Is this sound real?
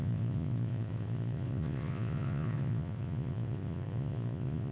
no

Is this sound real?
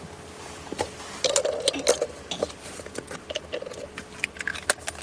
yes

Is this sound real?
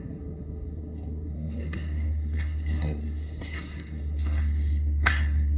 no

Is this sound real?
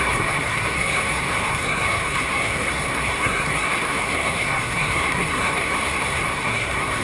no